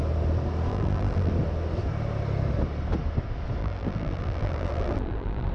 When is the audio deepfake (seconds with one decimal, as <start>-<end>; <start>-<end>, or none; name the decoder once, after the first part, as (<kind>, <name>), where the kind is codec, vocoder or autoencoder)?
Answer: 0.7-1.3 (vocoder, BigVGAN v2); 3.6-5.5